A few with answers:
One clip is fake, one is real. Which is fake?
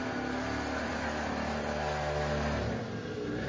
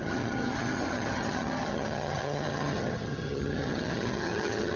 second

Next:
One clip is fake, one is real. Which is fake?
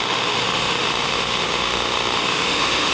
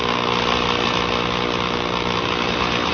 first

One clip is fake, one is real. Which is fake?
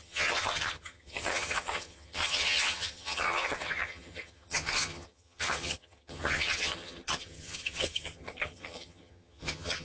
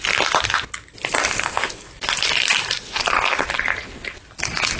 first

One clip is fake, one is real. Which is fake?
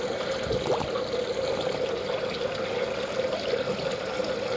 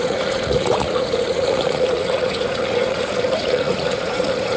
second